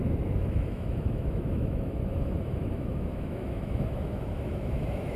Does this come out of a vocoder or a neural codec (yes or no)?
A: yes